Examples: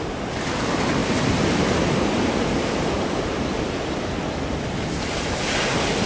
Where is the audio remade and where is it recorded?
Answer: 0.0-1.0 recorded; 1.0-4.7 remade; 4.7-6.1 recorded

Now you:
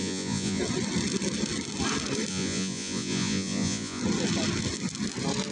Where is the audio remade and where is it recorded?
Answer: 0.0-0.6 remade; 0.6-2.3 recorded; 2.3-4.0 remade; 4.0-5.5 recorded

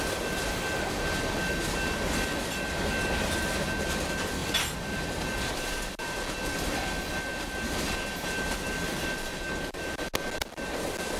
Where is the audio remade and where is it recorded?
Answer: 0.0-11.2 recorded

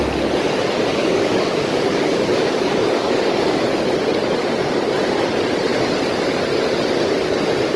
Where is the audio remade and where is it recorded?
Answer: 0.0-0.9 recorded; 0.9-3.6 remade; 3.6-7.8 recorded

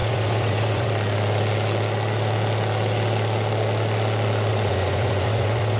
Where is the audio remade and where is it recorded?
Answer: 0.0-0.9 remade; 0.9-4.5 recorded; 4.5-5.8 remade